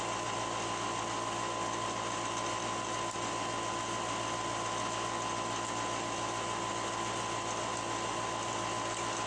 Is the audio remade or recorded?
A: recorded